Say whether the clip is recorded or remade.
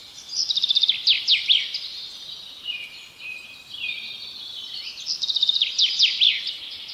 recorded